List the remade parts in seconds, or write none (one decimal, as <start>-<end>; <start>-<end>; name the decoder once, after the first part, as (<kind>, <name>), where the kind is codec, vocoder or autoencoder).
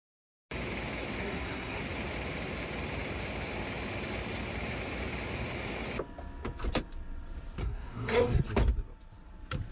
1.2-1.8 (codec, SNAC); 7.6-8.4